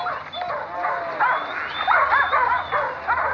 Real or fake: real